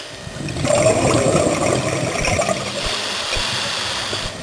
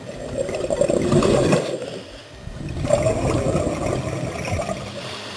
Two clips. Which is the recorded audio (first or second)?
second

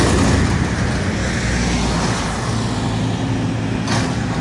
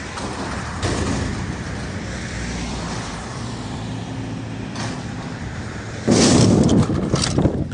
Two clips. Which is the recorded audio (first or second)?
first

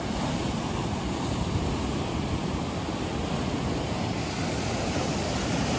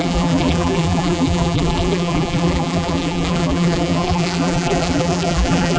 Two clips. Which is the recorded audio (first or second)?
first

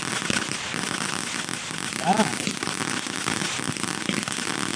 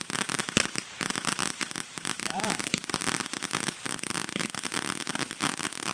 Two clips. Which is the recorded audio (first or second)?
first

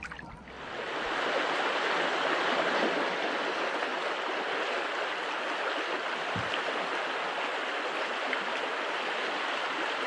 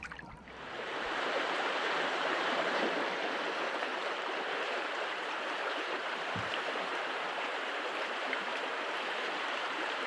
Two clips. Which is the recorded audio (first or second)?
first